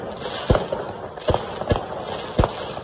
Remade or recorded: recorded